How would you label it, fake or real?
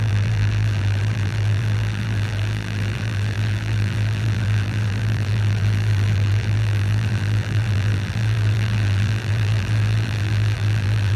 fake